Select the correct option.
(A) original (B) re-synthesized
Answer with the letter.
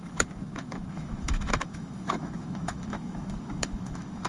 B